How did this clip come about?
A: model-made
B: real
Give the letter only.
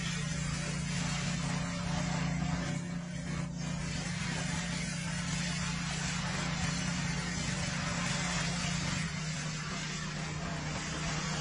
B